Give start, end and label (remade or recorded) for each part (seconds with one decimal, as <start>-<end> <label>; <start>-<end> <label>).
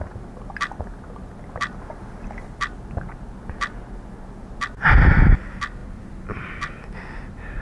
0.0-7.6 recorded